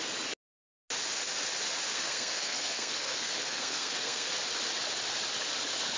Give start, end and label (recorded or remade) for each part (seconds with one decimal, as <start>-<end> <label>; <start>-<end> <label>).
0.0-1.9 recorded; 1.9-4.3 remade; 4.3-6.0 recorded